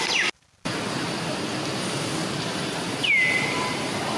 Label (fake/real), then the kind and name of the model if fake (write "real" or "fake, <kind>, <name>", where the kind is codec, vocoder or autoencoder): real